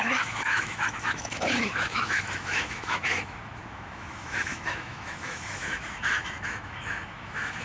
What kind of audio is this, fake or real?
fake